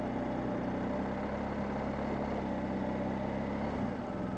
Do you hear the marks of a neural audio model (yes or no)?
no